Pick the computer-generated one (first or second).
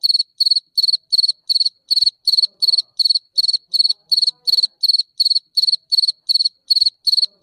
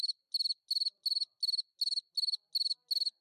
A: first